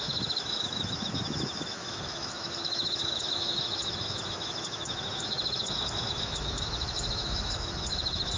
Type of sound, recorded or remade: remade